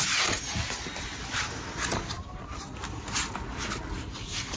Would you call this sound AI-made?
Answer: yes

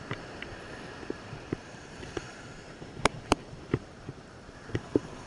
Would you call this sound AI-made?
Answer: yes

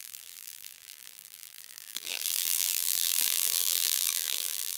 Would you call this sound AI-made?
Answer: yes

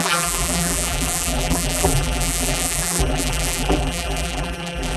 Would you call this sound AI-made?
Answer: yes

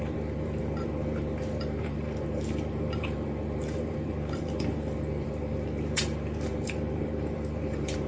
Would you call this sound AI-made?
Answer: yes